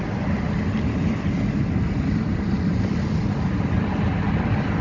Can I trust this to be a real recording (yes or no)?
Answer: yes